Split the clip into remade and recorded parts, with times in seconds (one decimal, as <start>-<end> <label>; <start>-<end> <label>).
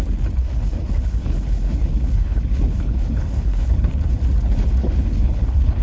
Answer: 0.0-0.4 recorded; 0.4-3.9 remade; 3.9-4.8 recorded; 4.8-5.8 remade